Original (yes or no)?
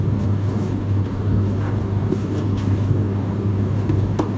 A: no